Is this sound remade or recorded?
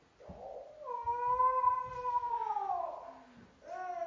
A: recorded